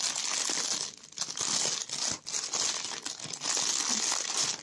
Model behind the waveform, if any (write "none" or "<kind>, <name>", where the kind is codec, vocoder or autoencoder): none